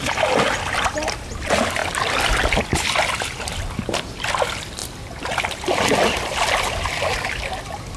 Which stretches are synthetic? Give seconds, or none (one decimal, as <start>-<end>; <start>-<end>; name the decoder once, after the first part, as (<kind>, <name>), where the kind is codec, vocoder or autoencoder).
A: none